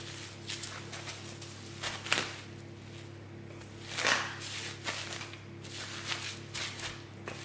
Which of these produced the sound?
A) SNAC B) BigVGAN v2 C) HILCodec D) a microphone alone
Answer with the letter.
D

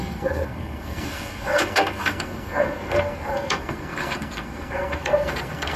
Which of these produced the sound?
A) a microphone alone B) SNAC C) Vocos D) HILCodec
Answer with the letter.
B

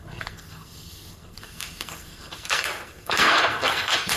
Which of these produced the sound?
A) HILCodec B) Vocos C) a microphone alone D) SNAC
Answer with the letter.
D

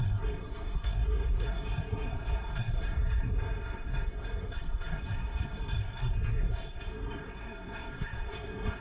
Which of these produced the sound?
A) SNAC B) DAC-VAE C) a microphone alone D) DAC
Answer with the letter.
A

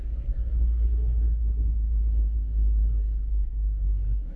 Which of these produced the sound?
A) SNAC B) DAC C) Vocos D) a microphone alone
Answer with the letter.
A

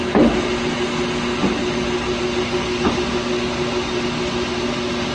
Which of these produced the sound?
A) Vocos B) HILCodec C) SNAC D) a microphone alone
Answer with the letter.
D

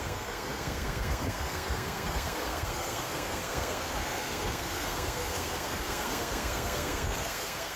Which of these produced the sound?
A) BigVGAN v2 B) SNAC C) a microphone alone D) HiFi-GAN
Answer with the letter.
B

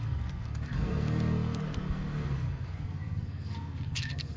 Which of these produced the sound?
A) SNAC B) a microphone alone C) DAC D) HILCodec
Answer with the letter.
A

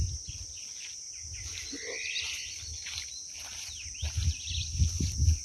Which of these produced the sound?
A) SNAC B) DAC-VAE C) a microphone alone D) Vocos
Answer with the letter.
C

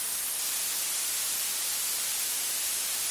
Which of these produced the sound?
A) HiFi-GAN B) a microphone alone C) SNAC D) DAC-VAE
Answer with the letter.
B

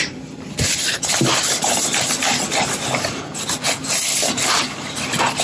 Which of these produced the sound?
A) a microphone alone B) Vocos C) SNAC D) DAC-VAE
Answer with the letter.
A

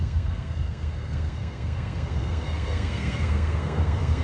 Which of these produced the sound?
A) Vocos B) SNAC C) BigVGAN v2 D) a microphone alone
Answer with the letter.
B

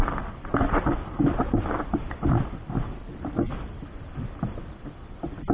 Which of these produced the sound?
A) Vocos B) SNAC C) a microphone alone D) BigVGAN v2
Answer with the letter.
C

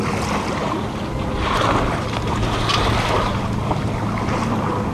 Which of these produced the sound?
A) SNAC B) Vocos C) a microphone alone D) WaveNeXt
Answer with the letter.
C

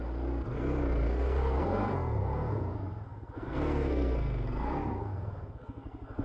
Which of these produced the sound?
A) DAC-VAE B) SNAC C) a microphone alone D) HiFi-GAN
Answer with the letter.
B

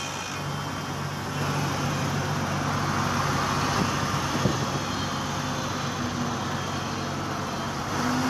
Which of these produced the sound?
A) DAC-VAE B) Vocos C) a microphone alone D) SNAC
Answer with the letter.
C